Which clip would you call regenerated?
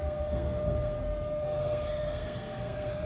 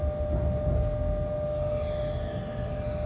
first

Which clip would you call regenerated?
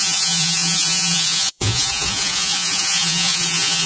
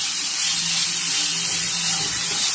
first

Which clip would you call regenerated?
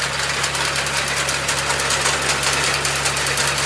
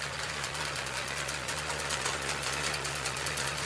second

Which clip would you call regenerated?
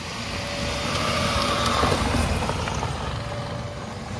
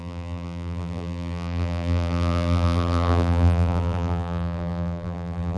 second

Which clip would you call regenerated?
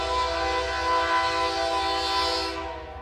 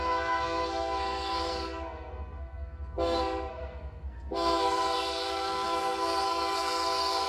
second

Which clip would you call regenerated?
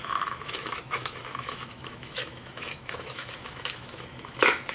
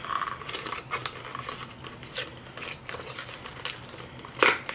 first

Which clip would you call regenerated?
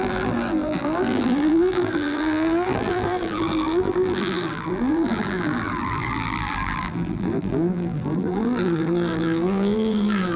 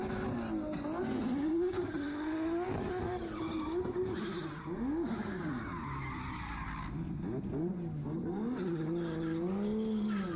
first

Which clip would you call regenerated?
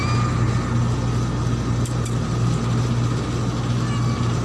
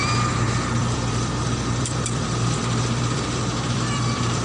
second